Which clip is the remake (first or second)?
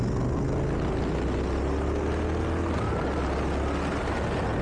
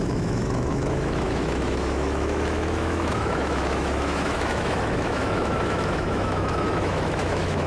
second